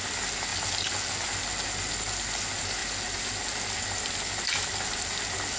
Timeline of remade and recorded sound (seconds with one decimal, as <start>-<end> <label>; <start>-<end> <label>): 0.0-2.8 recorded; 2.8-5.6 remade